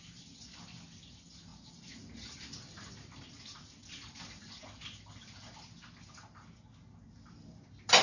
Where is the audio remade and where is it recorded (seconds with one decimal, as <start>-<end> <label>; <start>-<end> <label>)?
0.0-8.0 recorded